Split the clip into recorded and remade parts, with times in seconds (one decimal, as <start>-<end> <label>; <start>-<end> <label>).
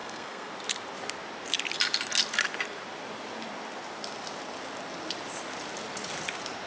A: 0.0-0.5 remade; 0.5-6.7 recorded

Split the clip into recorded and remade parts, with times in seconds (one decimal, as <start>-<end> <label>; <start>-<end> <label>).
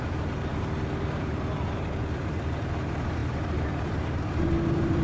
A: 0.0-5.0 remade